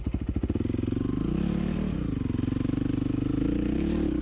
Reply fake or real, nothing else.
real